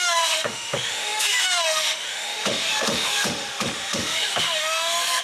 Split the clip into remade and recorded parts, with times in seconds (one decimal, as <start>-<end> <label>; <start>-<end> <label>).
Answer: 0.0-5.2 remade